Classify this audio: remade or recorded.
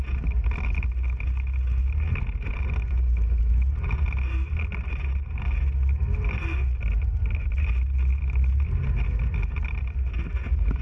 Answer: recorded